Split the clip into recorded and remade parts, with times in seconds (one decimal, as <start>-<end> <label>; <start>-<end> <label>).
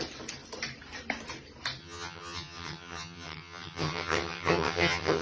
0.0-1.8 recorded; 1.8-5.2 remade